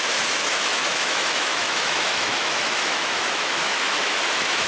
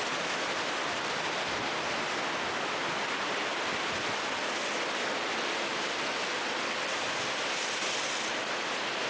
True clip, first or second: second